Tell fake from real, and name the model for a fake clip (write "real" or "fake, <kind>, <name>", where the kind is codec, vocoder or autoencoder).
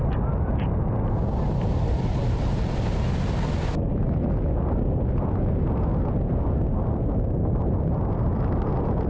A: real